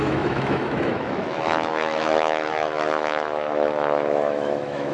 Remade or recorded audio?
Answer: remade